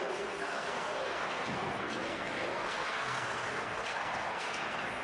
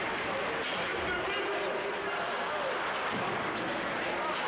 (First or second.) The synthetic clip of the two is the first